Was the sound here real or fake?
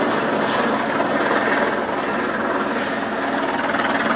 real